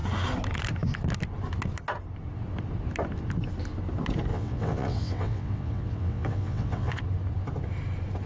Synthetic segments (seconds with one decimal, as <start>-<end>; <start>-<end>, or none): 4.3-7.0